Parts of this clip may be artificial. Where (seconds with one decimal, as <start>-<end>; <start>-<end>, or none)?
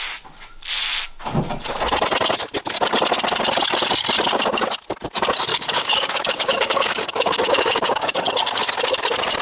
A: 5.5-8.3